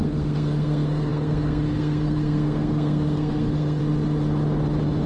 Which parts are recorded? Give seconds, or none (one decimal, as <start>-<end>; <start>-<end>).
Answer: 3.8-5.1